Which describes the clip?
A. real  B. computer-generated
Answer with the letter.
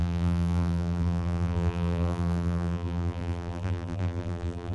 B